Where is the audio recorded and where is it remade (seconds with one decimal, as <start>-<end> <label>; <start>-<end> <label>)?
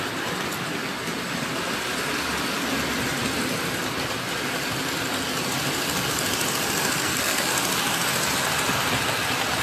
0.0-7.0 recorded; 7.0-7.5 remade; 7.5-9.6 recorded